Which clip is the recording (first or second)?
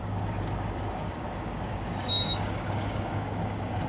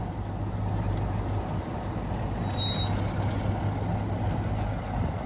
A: second